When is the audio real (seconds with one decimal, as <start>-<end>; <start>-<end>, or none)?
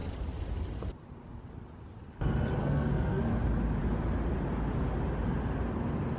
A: 0.0-2.6; 3.2-6.2